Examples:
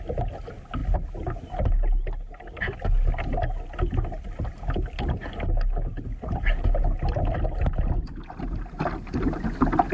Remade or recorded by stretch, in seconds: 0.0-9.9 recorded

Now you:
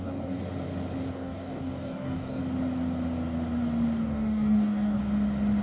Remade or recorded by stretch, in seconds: 0.0-0.4 remade; 0.4-1.1 recorded; 1.1-2.4 remade; 2.4-4.0 recorded; 4.0-5.0 remade; 5.0-5.6 recorded

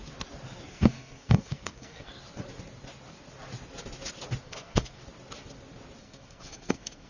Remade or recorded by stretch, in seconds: 0.0-0.7 recorded; 0.7-2.1 remade; 2.1-4.4 recorded; 4.4-5.0 remade; 5.0-6.0 recorded; 6.0-7.1 remade

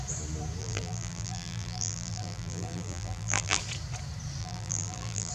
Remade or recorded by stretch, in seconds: 0.0-0.6 recorded; 0.6-3.6 remade; 3.6-4.4 recorded; 4.4-5.3 remade

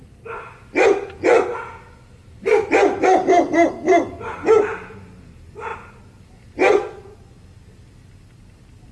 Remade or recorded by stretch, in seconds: 0.0-2.2 recorded; 2.2-3.7 remade; 3.7-8.9 recorded

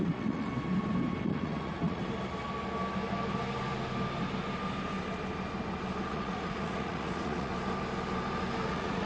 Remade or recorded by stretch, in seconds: 0.0-0.5 remade; 0.5-1.2 recorded; 1.2-2.0 remade; 2.0-6.1 recorded; 6.1-7.5 remade; 7.5-8.7 recorded; 8.7-9.1 remade

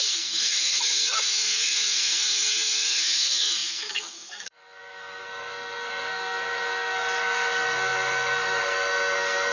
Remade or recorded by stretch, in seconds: 0.0-9.5 remade